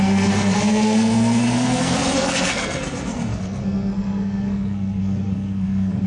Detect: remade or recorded remade